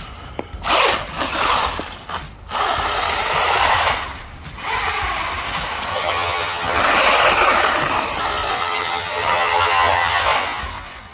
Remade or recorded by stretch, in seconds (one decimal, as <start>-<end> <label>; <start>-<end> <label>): 0.0-5.9 recorded; 5.9-6.8 remade; 6.8-8.6 recorded; 8.6-10.2 remade; 10.2-11.1 recorded